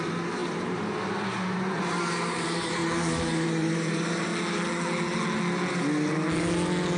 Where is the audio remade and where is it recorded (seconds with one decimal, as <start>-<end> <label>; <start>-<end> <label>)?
0.0-4.3 remade; 4.3-7.0 recorded